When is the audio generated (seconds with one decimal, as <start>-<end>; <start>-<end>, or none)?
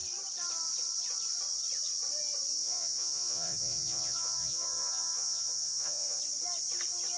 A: 2.6-6.2